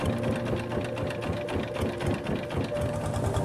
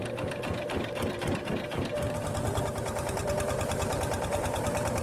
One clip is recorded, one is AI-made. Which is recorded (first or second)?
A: first